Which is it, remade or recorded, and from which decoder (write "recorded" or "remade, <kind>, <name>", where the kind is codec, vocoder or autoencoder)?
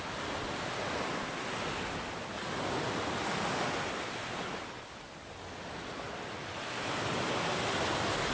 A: recorded